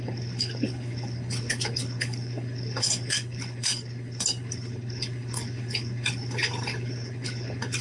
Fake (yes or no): yes